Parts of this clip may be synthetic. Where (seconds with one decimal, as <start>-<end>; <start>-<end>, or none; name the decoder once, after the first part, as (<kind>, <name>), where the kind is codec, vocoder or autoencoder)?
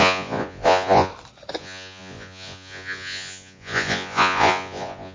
0.0-1.1 (vocoder, Vocos); 1.6-5.1